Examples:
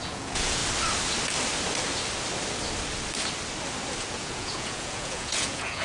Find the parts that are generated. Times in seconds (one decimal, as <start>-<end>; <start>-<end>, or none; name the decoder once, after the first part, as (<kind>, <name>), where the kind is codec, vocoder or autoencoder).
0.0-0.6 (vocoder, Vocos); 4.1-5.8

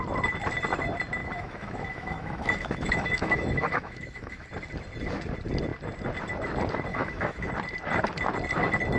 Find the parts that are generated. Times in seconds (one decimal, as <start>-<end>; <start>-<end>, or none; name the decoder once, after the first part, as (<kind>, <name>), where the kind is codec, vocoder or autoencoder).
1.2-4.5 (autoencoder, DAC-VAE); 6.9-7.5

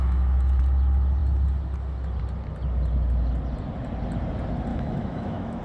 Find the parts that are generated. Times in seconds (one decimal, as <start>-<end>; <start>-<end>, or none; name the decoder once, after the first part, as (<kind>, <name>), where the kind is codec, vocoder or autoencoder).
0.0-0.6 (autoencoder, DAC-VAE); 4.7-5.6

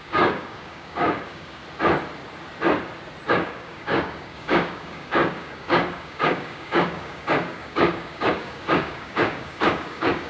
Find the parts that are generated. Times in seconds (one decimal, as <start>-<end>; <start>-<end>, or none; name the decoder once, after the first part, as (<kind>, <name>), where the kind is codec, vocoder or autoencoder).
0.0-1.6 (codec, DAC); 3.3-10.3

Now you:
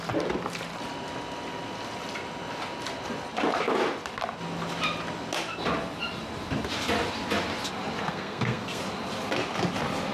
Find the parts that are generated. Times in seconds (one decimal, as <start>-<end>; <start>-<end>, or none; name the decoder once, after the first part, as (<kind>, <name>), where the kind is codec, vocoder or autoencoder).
8.1-8.8 (codec, SNAC)

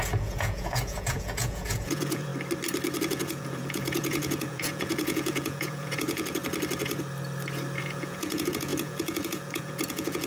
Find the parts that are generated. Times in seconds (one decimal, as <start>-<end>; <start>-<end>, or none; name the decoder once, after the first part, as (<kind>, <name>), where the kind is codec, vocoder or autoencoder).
0.0-2.3 (vocoder, Vocos); 3.0-6.4; 7.8-10.3

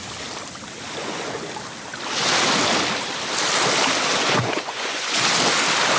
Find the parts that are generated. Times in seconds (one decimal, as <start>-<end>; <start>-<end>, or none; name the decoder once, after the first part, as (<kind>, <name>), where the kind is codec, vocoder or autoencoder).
1.0-1.5 (vocoder, Vocos); 4.2-5.2

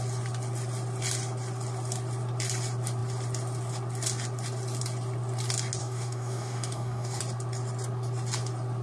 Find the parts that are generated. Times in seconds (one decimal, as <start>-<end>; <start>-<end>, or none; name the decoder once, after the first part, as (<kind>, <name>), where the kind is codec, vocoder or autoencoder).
5.8-7.2 (codec, DAC)